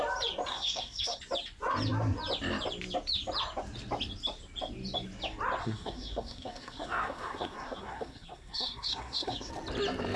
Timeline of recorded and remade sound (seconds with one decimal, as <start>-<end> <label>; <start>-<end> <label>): 0.0-0.5 recorded; 0.5-1.2 remade; 1.2-5.6 recorded; 5.6-9.5 remade; 9.5-10.2 recorded